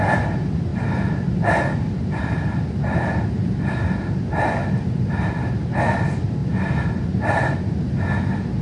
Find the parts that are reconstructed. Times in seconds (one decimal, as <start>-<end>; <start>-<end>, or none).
0.7-5.7; 6.4-8.0